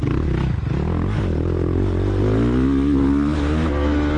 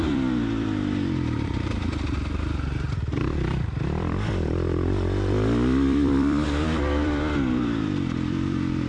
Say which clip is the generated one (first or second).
second